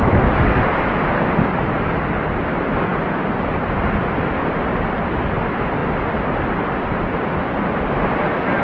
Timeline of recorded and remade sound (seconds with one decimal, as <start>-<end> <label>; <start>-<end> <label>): 0.0-8.6 recorded